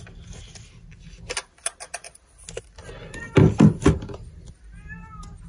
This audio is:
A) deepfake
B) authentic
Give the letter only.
B